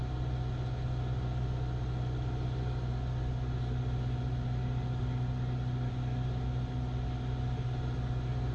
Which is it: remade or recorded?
recorded